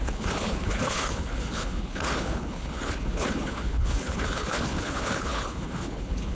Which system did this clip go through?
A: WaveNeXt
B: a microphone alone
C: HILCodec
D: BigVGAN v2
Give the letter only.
C